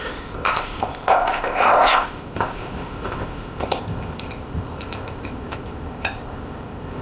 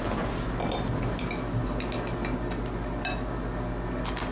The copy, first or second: first